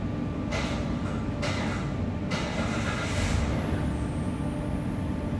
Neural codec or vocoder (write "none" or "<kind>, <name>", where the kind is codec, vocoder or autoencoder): none